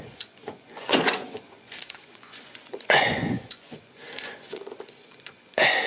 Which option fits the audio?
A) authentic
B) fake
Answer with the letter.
B